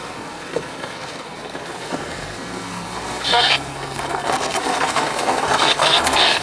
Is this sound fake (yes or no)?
yes